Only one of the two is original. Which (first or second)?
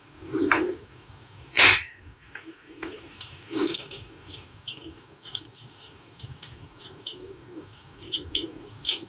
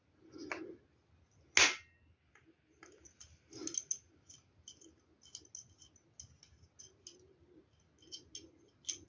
second